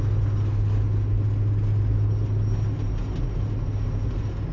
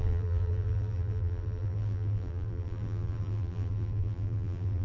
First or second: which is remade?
second